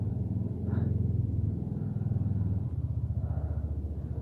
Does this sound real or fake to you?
real